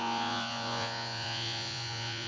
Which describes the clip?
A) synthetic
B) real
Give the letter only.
A